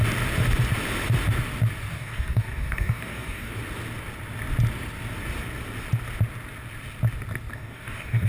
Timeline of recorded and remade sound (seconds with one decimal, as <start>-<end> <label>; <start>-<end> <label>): 0.0-1.9 recorded; 1.9-3.5 remade; 3.5-7.5 recorded; 7.5-8.3 remade